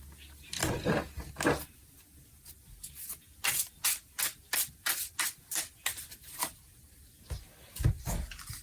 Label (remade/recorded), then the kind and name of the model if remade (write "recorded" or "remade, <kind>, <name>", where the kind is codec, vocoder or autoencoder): recorded